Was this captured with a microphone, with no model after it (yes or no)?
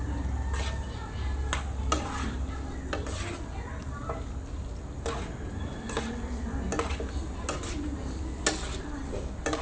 yes